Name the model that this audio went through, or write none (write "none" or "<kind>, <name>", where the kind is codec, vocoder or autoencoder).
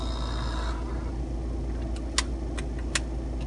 none